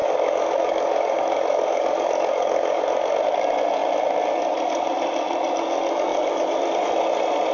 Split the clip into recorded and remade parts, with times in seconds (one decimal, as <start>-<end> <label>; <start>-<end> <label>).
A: 0.0-3.1 remade; 3.1-7.5 recorded